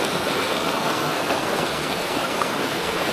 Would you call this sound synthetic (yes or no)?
yes